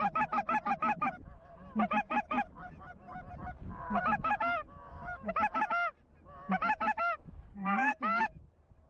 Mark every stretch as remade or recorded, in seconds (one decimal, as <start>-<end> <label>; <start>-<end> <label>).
0.0-7.5 recorded; 7.5-8.0 remade; 8.0-8.9 recorded